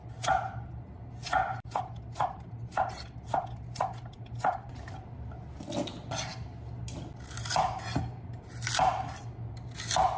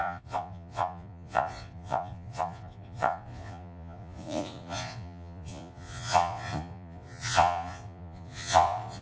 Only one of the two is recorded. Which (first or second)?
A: first